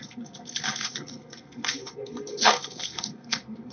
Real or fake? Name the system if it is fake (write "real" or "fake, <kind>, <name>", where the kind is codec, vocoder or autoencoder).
fake, codec, SNAC